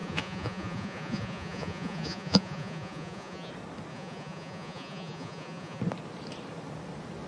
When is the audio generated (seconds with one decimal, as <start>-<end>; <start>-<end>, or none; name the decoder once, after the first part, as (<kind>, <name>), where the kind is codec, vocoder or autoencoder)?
0.0-3.5 (vocoder, Vocos); 3.9-5.8